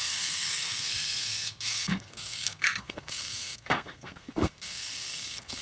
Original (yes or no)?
no